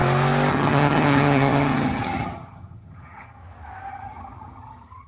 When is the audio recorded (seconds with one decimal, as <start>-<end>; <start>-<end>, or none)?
0.0-0.5; 3.4-3.9